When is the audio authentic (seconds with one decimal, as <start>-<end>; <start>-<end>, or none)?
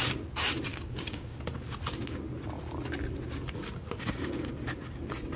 0.0-0.7; 1.4-5.4